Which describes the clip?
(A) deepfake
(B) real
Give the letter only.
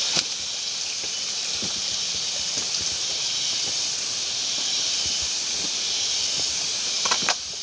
B